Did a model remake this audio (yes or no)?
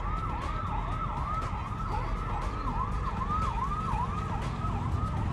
no